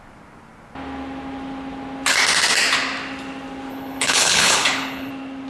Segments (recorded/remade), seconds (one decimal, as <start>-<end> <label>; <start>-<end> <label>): 0.0-3.7 recorded; 3.7-5.1 remade; 5.1-5.5 recorded

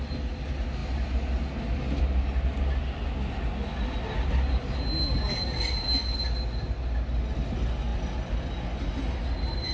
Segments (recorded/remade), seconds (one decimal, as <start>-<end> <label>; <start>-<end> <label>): 0.0-9.7 recorded

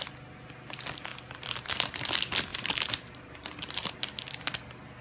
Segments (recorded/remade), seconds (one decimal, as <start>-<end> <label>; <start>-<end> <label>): 0.0-2.5 recorded; 2.5-3.9 remade; 3.9-5.0 recorded

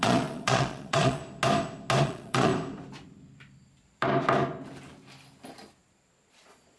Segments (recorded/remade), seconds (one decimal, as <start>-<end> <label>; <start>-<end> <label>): 0.0-1.2 remade; 1.2-2.0 recorded; 2.0-2.5 remade; 2.5-6.3 recorded; 6.3-6.8 remade

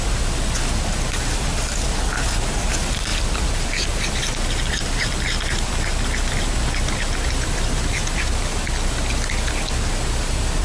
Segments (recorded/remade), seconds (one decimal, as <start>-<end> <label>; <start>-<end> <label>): 0.0-3.1 recorded; 3.1-8.3 remade; 8.3-10.6 recorded

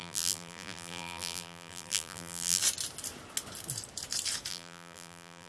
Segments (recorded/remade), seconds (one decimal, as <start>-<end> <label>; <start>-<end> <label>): 0.0-2.6 remade; 2.6-4.5 recorded; 4.5-5.5 remade

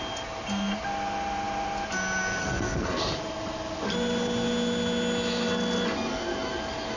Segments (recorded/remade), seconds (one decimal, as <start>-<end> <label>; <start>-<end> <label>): 0.0-2.4 recorded; 2.4-3.0 remade; 3.0-7.0 recorded